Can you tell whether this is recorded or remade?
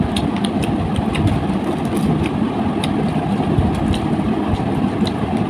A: recorded